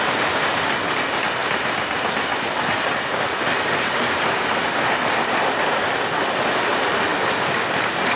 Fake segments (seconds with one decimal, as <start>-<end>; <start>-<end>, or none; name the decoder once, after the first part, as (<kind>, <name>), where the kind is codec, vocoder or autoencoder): none